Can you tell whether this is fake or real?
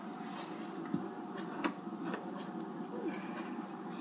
real